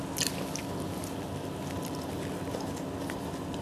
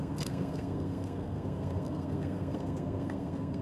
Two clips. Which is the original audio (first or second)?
first